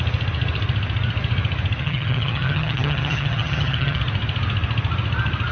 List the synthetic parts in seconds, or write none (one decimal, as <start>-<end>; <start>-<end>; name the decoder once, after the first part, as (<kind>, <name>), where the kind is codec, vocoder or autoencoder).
1.8-4.0 (vocoder, HiFi-GAN)